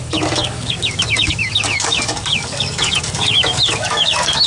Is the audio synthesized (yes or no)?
yes